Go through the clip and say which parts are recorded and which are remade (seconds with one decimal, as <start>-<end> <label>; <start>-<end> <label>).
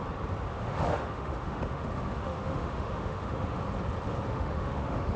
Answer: 0.0-0.5 recorded; 0.5-3.6 remade; 3.6-4.3 recorded; 4.3-5.2 remade